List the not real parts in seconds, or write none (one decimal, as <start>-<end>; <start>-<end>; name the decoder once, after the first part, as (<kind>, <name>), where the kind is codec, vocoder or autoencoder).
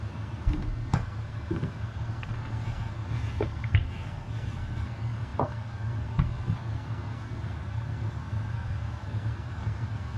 0.0-10.2 (codec, SNAC)